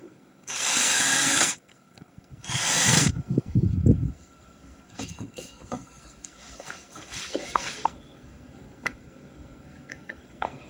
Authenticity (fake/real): fake